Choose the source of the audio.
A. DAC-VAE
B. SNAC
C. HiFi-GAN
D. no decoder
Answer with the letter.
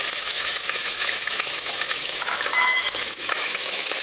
A